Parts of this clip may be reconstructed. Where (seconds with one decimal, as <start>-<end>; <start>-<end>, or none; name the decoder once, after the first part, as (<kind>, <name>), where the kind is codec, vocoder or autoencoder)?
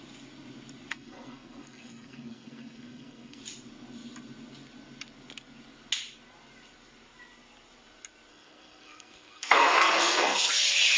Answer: 0.9-3.4 (codec, SNAC); 8.3-10.5